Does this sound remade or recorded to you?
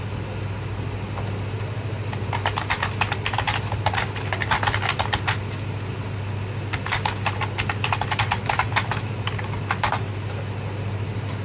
recorded